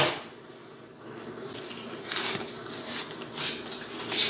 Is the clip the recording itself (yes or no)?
yes